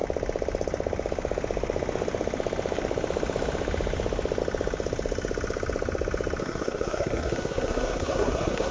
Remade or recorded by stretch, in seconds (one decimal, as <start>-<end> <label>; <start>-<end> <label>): 0.0-6.4 recorded; 6.4-8.7 remade